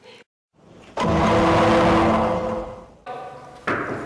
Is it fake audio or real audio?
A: real